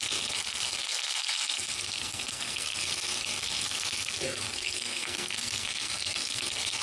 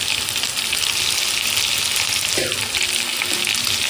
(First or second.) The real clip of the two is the second